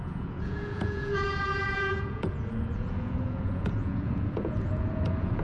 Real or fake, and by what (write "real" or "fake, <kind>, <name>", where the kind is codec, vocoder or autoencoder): fake, vocoder, Vocos